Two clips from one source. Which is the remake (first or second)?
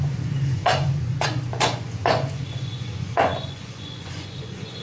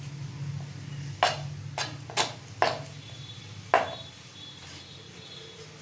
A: first